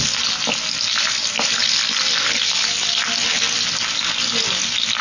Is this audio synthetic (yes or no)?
no